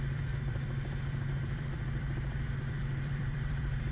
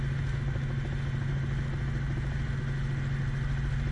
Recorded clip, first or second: second